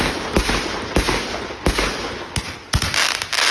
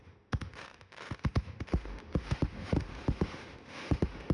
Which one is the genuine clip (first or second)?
first